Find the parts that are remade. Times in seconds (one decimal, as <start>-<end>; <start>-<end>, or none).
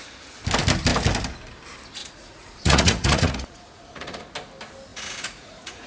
2.0-4.2; 4.9-5.9